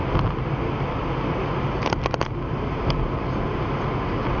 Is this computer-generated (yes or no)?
no